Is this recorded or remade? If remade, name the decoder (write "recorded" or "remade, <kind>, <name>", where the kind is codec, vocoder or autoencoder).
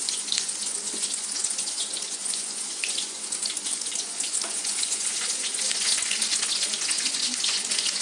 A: remade, vocoder, Vocos